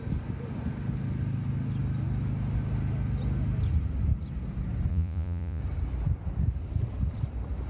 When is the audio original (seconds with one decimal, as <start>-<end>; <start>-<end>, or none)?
0.0-4.9; 5.6-7.7